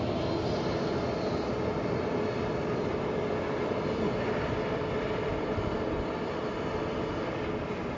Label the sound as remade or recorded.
recorded